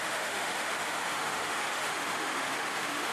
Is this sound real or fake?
fake